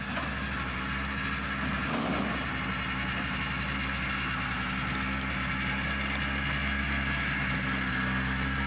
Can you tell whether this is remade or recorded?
recorded